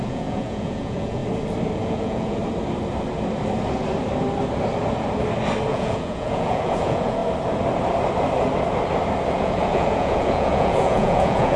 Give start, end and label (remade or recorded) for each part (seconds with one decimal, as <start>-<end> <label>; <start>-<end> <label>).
0.0-1.2 remade; 1.2-1.8 recorded; 1.8-2.4 remade; 2.4-5.7 recorded; 5.7-7.2 remade; 7.2-9.3 recorded; 9.3-11.6 remade

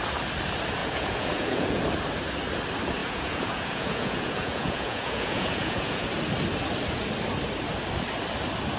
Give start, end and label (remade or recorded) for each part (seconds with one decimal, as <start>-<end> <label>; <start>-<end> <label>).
0.0-0.8 recorded; 0.8-1.8 remade; 1.8-3.0 recorded; 3.0-6.1 remade; 6.1-8.8 recorded

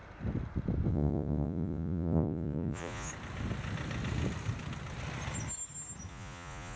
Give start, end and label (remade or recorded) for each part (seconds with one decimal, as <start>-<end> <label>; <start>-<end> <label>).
0.0-0.9 recorded; 0.9-3.1 remade; 3.1-6.1 recorded; 6.1-6.8 remade

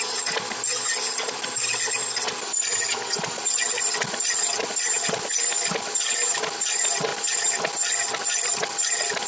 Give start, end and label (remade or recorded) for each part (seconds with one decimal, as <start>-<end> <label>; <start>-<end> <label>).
0.0-9.3 recorded

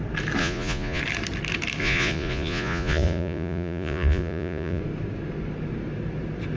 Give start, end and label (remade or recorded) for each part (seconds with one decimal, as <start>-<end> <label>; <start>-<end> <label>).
0.0-0.4 recorded; 0.4-1.0 remade; 1.0-1.8 recorded; 1.8-4.8 remade; 4.8-6.6 recorded

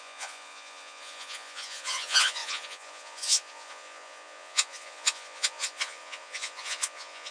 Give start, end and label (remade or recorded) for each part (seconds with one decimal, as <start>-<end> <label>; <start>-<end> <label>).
0.0-7.3 remade